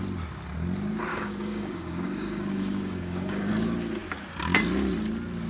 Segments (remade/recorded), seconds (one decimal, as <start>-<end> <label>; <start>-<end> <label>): 0.0-1.1 recorded; 1.1-3.5 remade; 3.5-5.5 recorded